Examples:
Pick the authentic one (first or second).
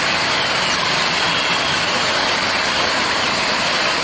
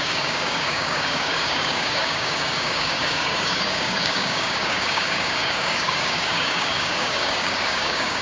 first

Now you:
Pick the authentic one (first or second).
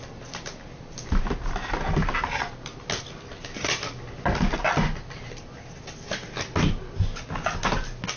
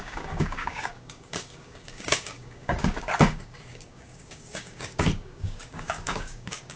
first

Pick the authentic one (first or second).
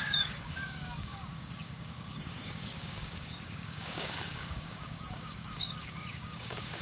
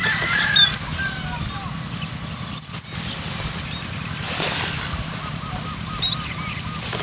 second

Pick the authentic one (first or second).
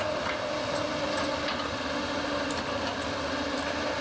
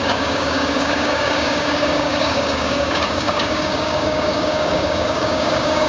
first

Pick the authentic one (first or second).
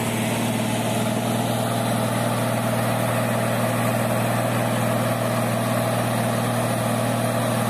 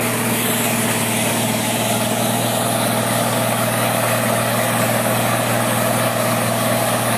first